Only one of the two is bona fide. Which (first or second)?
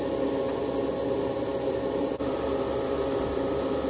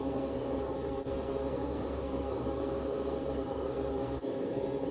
first